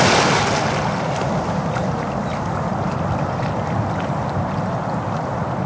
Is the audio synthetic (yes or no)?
no